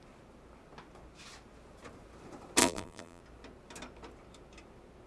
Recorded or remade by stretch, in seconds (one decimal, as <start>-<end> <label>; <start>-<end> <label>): 0.0-2.6 recorded; 2.6-3.2 remade; 3.2-5.1 recorded